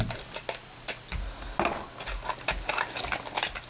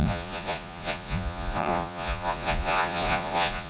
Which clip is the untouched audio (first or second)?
first